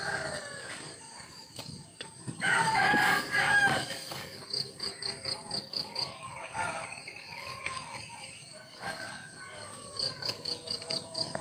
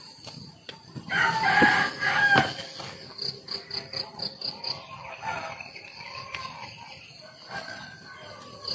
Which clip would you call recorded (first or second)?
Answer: second